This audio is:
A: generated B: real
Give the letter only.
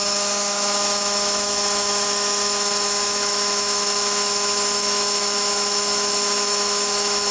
A